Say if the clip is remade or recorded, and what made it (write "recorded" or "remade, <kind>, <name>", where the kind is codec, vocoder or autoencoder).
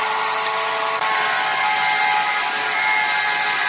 recorded